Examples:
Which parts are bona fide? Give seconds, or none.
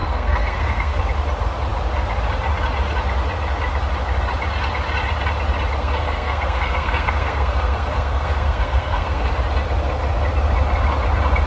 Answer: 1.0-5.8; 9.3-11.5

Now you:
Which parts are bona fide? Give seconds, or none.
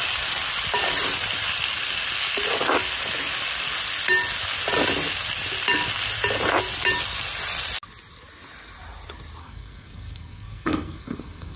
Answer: 0.0-9.4